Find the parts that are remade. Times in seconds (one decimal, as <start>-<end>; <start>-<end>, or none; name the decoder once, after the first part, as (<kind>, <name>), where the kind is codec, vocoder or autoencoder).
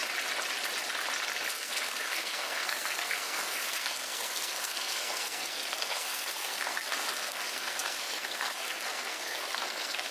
1.5-10.1 (codec, SNAC)